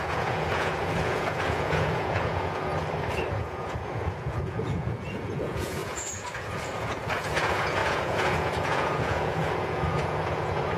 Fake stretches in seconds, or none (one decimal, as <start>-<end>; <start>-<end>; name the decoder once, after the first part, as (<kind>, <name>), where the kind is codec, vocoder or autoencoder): 0.0-2.7 (vocoder, Vocos); 3.3-10.8